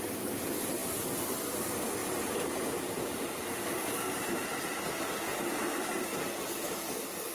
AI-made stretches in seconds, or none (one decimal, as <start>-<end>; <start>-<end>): 2.0-4.5; 5.3-5.9